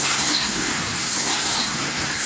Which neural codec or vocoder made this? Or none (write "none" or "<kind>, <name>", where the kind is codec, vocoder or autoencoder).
codec, SNAC